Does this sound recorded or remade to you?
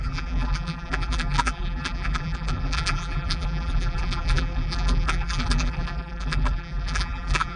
remade